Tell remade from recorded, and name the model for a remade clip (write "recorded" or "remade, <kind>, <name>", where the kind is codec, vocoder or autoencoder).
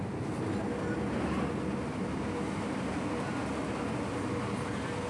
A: recorded